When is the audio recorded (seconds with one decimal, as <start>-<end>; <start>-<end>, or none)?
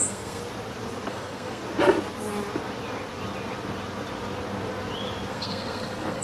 0.4-1.1; 1.6-5.3